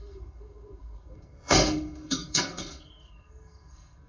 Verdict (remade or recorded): remade